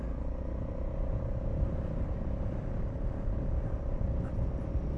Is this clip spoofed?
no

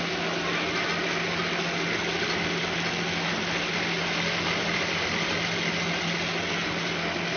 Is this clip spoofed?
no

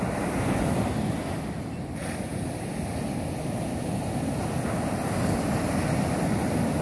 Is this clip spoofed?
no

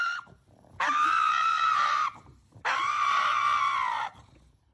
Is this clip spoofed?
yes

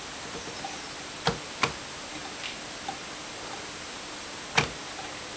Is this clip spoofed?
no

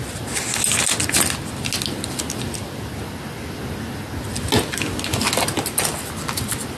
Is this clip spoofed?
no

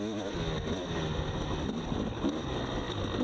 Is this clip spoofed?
no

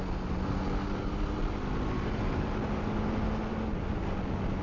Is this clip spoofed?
no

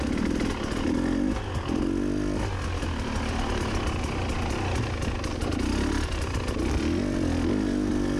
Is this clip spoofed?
no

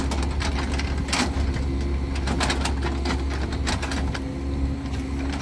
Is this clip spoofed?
no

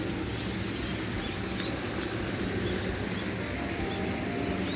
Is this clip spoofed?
no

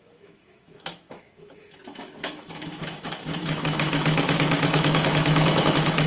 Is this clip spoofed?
yes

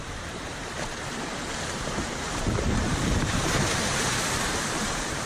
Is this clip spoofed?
yes